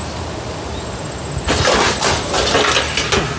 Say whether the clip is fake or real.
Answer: real